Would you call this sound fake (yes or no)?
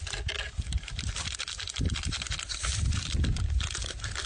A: no